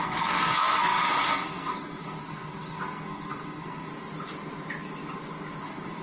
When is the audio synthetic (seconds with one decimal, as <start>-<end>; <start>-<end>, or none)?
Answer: 0.0-3.9; 5.6-6.0